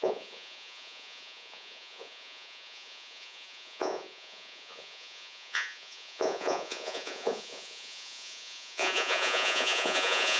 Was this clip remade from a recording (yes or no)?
yes